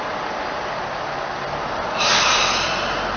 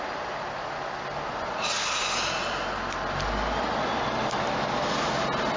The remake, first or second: first